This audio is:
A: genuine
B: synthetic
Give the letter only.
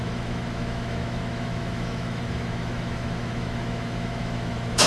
B